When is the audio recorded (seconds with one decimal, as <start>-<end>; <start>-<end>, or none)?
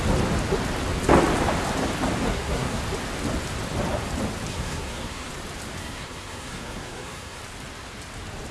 0.0-2.3; 2.8-4.5; 5.3-5.8; 7.4-8.5